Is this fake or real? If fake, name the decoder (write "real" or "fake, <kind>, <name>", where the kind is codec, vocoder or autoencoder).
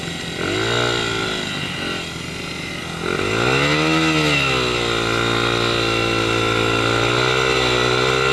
real